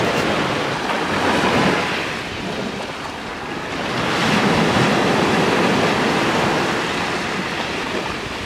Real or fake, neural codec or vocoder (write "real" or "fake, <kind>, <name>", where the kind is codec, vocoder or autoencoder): real